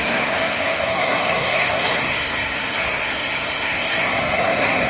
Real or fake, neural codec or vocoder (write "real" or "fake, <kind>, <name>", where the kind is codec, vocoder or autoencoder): fake, codec, SNAC